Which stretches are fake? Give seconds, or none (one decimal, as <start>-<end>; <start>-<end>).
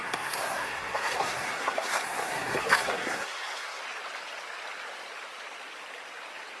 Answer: 0.0-3.8